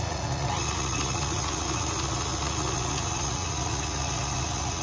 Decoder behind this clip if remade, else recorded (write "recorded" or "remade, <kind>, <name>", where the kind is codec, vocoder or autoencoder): remade, vocoder, Vocos